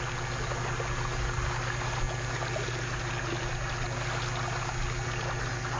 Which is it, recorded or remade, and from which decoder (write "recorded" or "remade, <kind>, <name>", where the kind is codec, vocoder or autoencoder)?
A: recorded